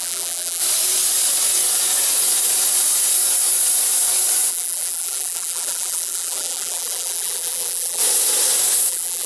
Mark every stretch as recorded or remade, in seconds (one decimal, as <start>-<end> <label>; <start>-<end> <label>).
0.0-0.6 remade; 0.6-4.5 recorded; 4.5-8.0 remade; 8.0-8.9 recorded; 8.9-9.3 remade